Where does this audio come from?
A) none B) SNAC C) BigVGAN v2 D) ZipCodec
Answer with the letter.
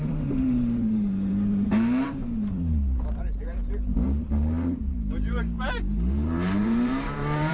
C